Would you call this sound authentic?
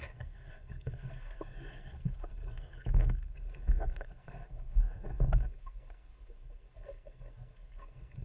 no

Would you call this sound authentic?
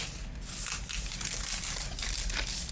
yes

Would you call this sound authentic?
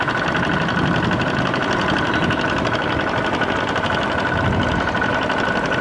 yes